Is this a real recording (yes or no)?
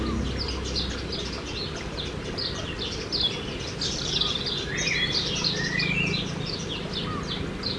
yes